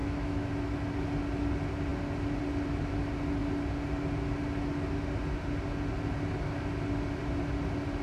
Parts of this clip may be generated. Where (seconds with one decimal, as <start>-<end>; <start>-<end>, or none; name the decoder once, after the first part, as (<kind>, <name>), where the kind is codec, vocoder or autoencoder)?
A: 0.0-0.5 (autoencoder, DAC-VAE)